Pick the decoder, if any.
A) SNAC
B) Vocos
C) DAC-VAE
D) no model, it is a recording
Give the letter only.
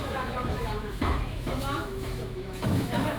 C